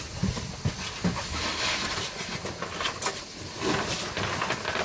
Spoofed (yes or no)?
no